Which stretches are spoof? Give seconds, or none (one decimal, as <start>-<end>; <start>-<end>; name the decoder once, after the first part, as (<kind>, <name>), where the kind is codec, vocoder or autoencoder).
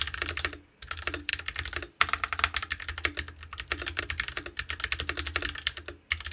none